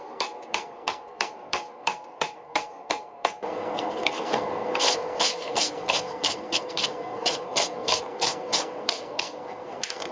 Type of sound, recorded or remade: remade